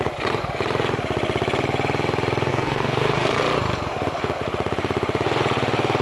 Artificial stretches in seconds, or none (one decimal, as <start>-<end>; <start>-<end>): 2.5-3.4